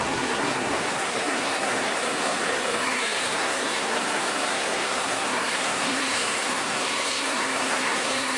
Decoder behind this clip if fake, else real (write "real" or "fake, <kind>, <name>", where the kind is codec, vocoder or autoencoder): fake, codec, SNAC